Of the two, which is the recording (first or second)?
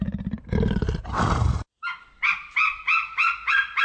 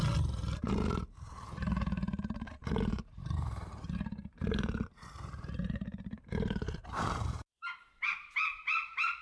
first